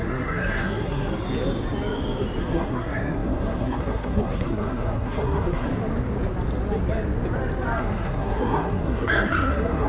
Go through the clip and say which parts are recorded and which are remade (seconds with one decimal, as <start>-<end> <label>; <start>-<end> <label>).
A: 0.0-1.1 remade; 1.1-2.4 recorded; 2.4-5.7 remade; 5.7-7.8 recorded; 7.8-9.9 remade